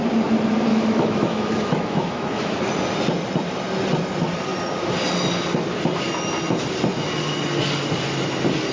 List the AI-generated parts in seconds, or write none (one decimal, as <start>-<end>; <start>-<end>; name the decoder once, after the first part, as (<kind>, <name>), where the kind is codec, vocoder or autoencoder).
0.7-2.6 (autoencoder, DAC-VAE)